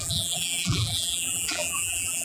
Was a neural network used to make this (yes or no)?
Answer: yes